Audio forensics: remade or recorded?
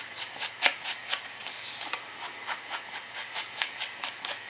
remade